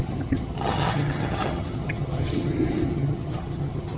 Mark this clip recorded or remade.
remade